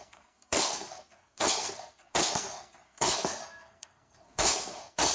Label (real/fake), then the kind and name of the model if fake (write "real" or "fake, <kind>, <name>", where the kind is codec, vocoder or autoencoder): fake, codec, SNAC